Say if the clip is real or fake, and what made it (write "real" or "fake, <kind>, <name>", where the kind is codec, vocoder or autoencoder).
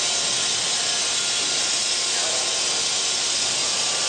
real